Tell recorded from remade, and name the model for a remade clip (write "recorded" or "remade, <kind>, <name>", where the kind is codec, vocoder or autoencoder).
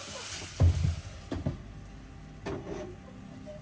recorded